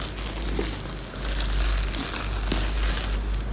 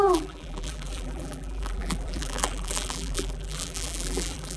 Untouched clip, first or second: first